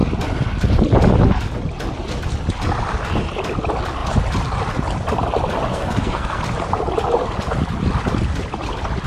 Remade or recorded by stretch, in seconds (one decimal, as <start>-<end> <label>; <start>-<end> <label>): 0.0-5.7 recorded; 5.7-6.4 remade; 6.4-9.1 recorded